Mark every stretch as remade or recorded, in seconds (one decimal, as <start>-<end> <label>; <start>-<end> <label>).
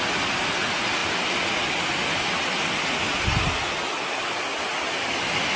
0.0-5.6 recorded